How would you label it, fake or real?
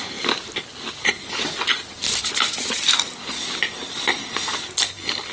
real